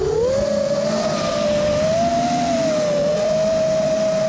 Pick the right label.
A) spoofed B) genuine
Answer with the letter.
B